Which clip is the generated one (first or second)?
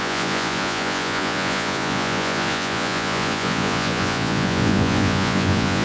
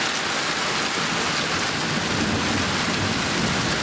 first